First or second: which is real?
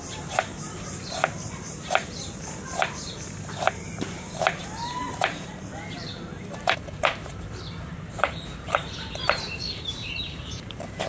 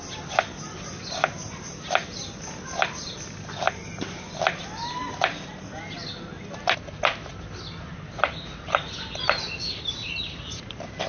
second